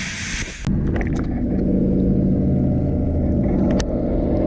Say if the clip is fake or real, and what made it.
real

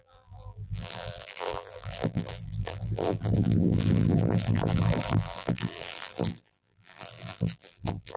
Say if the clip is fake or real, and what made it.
fake, vocoder, BigVGAN v2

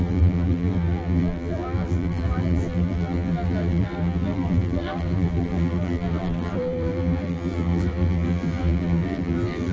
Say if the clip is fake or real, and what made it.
fake, vocoder, BigVGAN v2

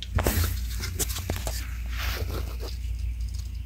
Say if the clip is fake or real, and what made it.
real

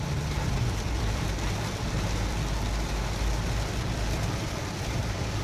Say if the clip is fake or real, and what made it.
fake, vocoder, BigVGAN v2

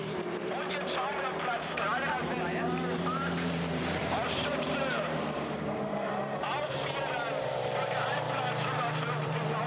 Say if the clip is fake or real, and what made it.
fake, vocoder, BigVGAN v2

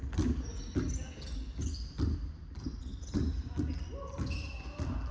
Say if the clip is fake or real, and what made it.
real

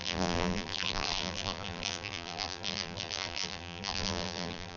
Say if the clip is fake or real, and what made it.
fake, vocoder, BigVGAN v2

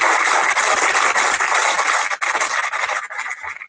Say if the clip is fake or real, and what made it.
real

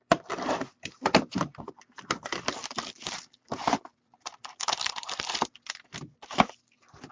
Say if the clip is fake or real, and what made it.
fake, vocoder, BigVGAN v2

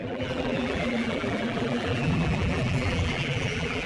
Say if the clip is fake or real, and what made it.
fake, vocoder, BigVGAN v2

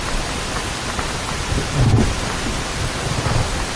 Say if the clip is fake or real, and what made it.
real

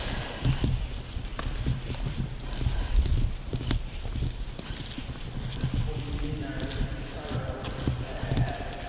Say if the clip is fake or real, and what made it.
real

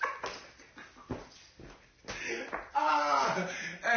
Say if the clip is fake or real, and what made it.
real